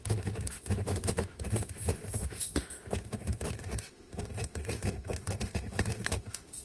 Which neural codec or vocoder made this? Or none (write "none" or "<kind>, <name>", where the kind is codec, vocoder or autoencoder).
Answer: autoencoder, DAC-VAE